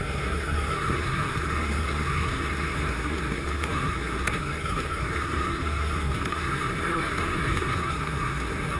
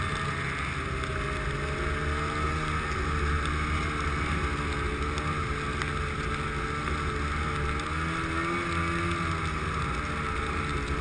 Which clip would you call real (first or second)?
second